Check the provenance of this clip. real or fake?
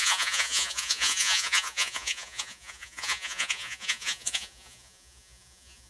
fake